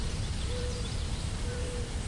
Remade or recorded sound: remade